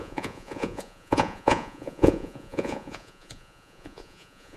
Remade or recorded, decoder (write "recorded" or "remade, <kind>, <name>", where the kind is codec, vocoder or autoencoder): remade, vocoder, Vocos